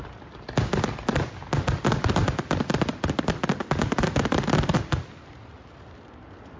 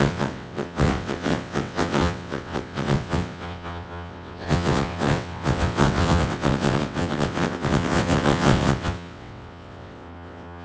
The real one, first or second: first